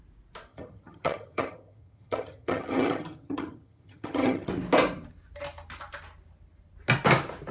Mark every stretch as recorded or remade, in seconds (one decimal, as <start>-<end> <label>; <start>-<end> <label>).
0.0-0.5 recorded; 0.5-4.5 remade; 4.5-7.5 recorded